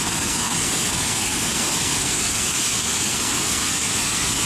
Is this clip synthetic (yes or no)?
yes